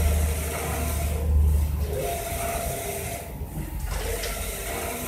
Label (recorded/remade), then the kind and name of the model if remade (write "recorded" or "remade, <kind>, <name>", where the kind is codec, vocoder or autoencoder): recorded